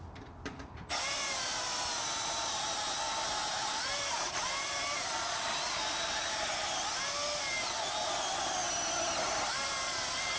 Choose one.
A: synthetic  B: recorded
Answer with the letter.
B